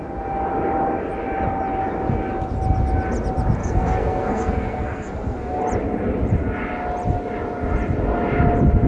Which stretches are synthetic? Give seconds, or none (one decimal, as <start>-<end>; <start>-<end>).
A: 3.6-5.6